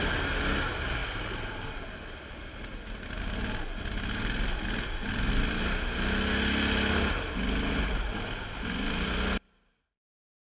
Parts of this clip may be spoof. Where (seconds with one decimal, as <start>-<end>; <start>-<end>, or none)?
none